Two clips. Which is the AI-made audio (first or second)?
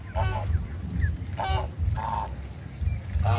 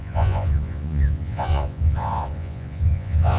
second